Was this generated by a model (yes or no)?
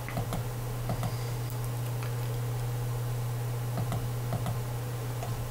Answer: no